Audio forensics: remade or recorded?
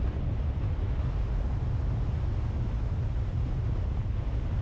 recorded